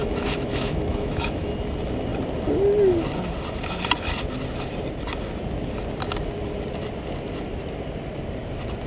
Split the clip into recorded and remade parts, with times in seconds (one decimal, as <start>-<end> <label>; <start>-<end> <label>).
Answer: 0.0-1.5 remade; 1.5-8.9 recorded